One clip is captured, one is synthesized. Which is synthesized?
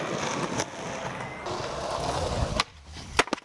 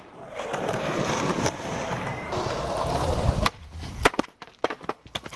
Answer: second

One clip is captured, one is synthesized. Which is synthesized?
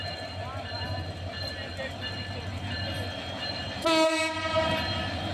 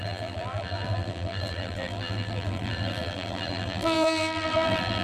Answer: second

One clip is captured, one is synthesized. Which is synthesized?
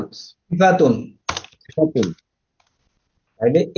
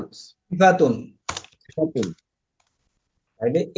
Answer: second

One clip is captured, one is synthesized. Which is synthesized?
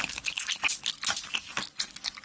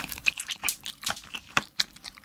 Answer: second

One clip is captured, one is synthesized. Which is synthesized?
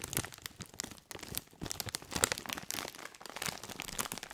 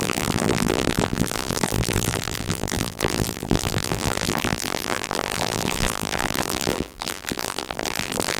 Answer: second